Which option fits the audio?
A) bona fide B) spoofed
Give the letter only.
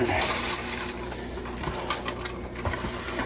A